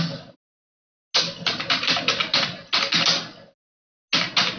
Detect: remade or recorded recorded